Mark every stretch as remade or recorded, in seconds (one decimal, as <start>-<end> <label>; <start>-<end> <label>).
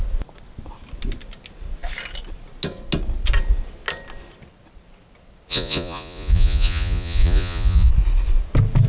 0.0-5.5 recorded; 5.5-7.9 remade; 7.9-8.9 recorded